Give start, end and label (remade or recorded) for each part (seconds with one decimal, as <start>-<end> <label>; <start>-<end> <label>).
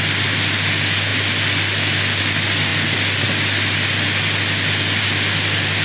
0.0-5.8 recorded